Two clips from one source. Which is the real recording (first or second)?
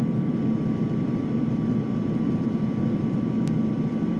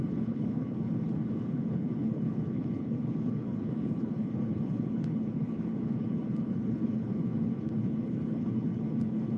first